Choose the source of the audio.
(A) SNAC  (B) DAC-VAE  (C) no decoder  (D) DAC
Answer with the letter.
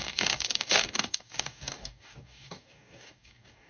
D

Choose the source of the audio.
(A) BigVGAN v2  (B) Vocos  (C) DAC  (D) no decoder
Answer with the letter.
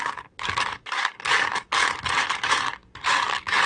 C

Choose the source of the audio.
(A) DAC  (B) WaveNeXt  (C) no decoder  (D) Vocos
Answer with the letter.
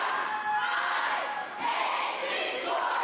C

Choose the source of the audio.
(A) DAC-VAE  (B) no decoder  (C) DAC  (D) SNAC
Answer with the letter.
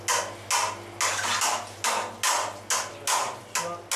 B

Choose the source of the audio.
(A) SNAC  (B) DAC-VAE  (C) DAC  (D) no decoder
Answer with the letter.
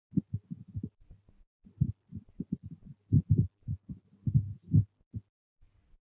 D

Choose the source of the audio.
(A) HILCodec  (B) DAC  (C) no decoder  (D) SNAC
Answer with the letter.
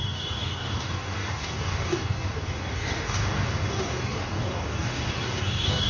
B